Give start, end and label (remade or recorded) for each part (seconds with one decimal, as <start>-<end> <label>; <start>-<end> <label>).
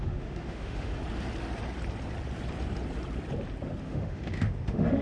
0.0-0.9 remade; 0.9-3.8 recorded; 3.8-5.0 remade